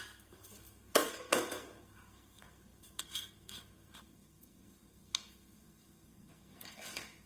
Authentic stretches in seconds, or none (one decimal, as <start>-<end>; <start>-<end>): none